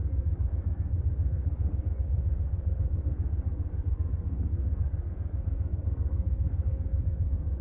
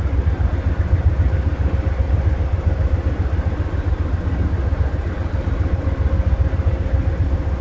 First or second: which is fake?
first